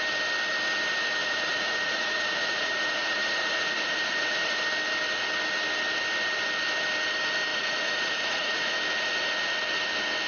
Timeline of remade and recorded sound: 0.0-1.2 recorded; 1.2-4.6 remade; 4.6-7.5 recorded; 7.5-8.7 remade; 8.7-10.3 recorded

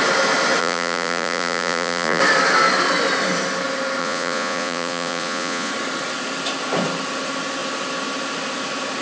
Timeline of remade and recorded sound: 0.0-0.6 recorded; 0.6-2.2 remade; 2.2-4.0 recorded; 4.0-5.7 remade; 5.7-9.0 recorded

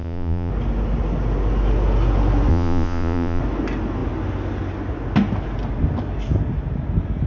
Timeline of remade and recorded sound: 0.0-0.5 remade; 0.5-2.5 recorded; 2.5-3.4 remade; 3.4-7.3 recorded

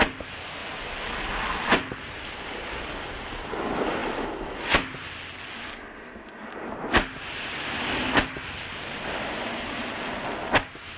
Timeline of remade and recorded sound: 0.0-11.0 recorded

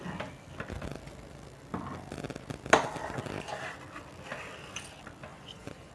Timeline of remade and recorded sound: 0.0-5.3 recorded; 5.3-5.9 remade

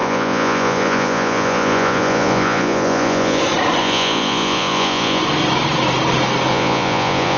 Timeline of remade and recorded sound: 0.0-3.4 remade; 3.4-3.8 recorded; 3.8-5.2 remade; 5.2-6.5 recorded; 6.5-7.4 remade